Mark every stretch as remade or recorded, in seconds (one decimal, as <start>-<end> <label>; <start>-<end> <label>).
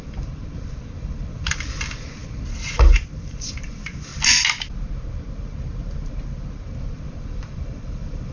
0.0-4.1 remade; 4.1-6.8 recorded; 6.8-8.3 remade